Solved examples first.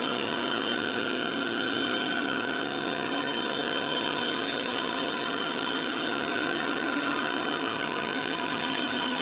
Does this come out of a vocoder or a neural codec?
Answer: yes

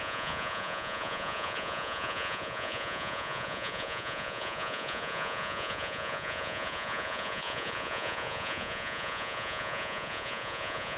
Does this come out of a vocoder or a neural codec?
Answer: yes